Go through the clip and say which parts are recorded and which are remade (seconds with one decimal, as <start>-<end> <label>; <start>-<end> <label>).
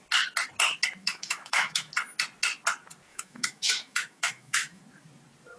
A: 0.0-1.0 recorded; 1.0-1.9 remade; 1.9-3.1 recorded; 3.1-4.8 remade; 4.8-5.6 recorded